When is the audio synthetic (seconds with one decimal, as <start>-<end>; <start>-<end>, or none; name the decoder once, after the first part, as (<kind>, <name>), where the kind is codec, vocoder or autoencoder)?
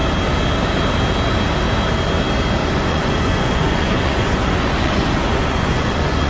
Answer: 2.6-6.3 (vocoder, Vocos)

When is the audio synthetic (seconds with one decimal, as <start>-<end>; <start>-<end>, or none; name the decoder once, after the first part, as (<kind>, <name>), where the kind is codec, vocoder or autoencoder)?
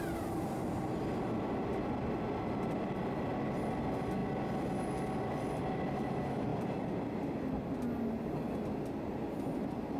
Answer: none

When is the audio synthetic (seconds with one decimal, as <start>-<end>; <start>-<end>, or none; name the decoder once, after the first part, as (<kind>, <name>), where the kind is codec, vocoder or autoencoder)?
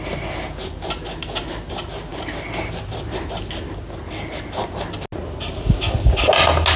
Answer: none